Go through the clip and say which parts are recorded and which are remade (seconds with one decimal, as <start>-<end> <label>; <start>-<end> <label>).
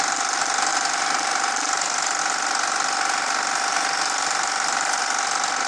0.0-5.7 recorded